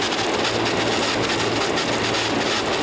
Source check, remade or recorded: recorded